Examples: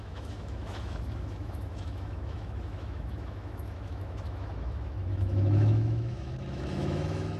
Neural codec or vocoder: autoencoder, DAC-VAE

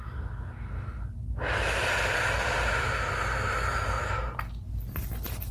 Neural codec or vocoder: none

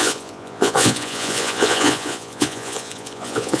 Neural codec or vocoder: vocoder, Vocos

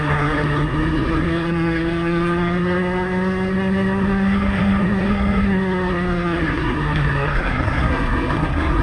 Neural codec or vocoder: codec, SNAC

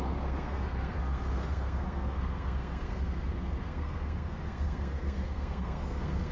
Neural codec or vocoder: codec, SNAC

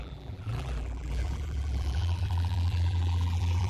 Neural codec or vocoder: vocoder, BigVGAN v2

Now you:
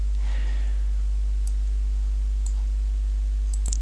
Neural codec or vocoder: none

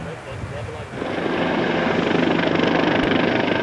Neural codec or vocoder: none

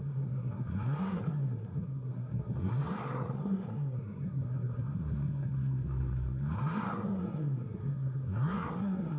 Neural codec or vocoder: codec, SNAC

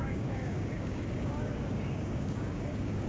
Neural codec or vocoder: codec, DAC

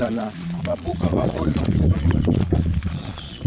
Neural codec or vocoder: vocoder, Vocos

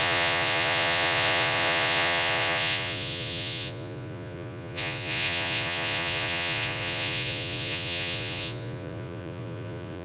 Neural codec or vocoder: vocoder, Vocos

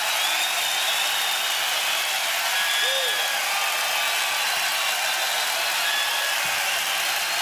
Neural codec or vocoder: none